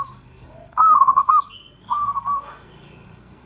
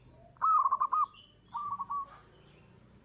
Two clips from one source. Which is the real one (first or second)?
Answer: second